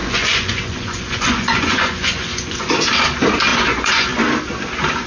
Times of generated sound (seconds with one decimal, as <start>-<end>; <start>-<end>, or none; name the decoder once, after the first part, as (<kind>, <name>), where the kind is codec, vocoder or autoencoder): 0.0-2.7 (vocoder, Vocos); 3.5-4.2